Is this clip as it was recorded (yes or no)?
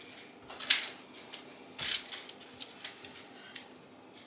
yes